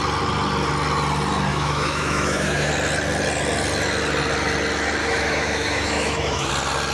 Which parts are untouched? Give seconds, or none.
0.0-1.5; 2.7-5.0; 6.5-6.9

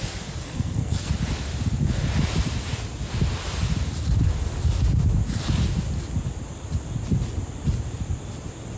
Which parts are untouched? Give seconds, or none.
0.0-0.4; 1.1-8.8

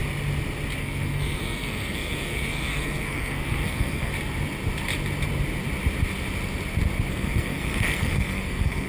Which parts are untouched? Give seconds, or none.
0.0-0.8; 4.1-7.1

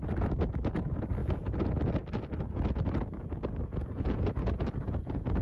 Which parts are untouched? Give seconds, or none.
0.0-3.7

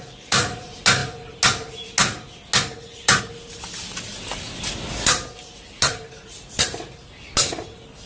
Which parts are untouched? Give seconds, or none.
0.0-8.1

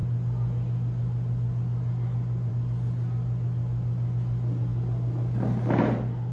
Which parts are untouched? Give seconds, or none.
0.0-6.3

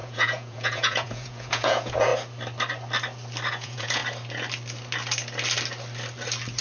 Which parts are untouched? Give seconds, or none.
2.1-3.5; 4.0-6.6